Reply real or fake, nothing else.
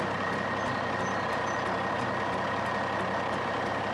real